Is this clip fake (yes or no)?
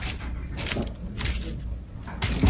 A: no